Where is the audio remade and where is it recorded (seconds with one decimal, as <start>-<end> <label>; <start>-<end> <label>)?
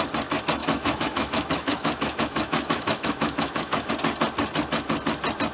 0.0-0.6 recorded; 0.6-3.9 remade; 3.9-5.5 recorded